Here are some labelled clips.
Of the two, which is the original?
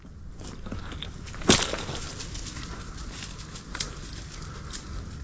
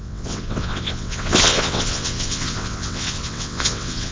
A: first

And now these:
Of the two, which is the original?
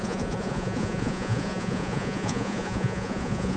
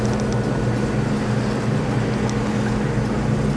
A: second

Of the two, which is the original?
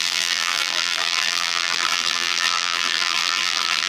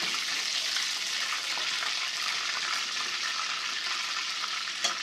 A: second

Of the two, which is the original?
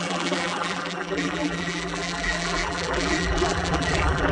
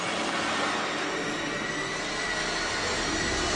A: second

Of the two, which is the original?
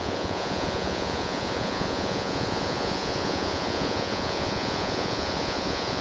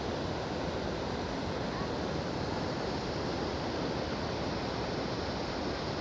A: second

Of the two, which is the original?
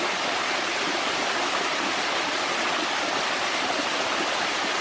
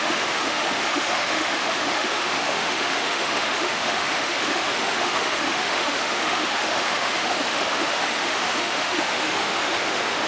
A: first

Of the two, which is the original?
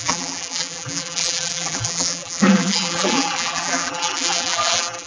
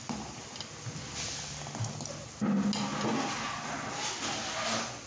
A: second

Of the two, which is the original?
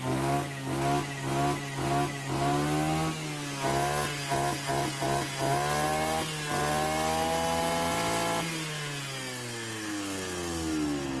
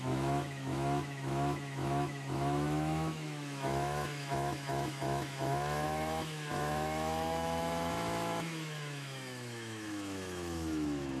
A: first